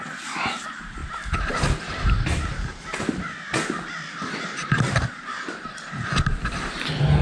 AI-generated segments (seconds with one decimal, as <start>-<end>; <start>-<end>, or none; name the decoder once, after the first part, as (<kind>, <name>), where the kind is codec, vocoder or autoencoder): none